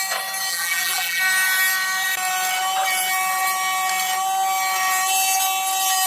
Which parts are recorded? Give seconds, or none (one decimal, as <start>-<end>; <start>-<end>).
0.0-0.5; 1.2-6.1